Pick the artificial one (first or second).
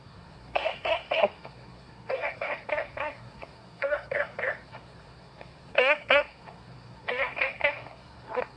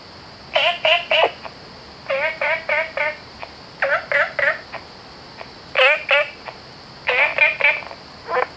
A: first